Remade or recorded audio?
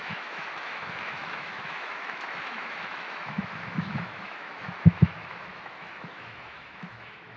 remade